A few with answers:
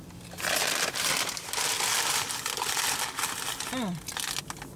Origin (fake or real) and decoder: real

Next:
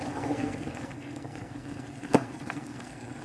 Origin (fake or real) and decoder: fake, codec, SNAC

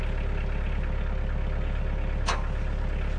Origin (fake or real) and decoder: real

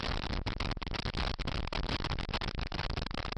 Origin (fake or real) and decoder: real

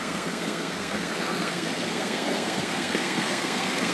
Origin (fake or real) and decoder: fake, codec, SNAC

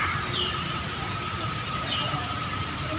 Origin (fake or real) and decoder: real